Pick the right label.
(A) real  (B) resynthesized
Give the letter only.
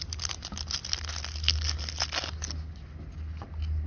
A